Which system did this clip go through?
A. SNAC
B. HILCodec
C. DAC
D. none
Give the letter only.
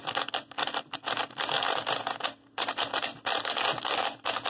D